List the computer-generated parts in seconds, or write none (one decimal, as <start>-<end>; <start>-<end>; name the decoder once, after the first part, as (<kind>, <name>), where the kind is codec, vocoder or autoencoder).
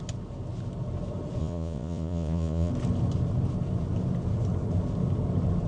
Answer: 1.4-2.7 (vocoder, Vocos)